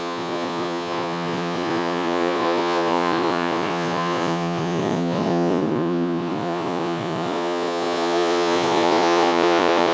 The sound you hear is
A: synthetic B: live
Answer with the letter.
A